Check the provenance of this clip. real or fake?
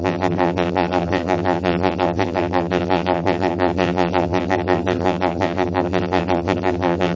fake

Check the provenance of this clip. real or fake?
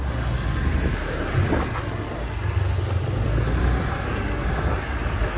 real